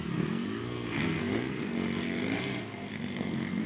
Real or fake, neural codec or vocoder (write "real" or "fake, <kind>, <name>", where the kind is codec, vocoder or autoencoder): fake, codec, SNAC